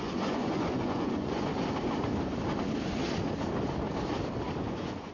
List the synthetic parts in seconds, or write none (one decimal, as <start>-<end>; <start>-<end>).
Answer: 0.0-1.5; 4.6-5.1